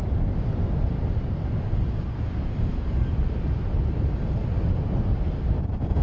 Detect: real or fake real